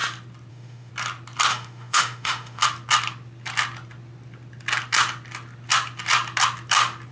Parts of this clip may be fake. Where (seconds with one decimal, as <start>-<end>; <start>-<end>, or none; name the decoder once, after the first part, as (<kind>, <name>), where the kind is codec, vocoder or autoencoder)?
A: 0.5-0.9 (autoencoder, DAC-VAE); 1.5-2.6